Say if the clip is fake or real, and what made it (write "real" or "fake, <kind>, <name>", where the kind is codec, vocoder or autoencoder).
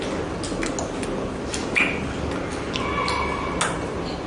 real